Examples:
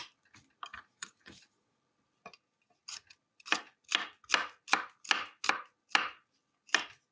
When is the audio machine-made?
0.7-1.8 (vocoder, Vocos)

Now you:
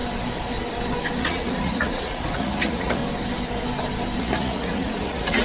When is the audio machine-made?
1.2-3.0 (vocoder, Vocos); 4.2-5.4

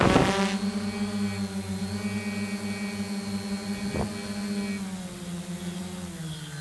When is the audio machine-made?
none

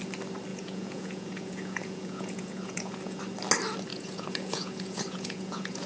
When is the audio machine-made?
0.5-3.2 (vocoder, Vocos); 3.9-5.9

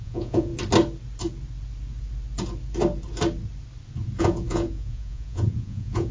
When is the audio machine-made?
0.0-0.5 (vocoder, Vocos); 4.2-6.1